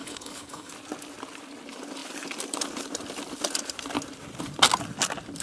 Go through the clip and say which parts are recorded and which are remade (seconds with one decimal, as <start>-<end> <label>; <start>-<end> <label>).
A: 0.0-0.7 remade; 0.7-5.4 recorded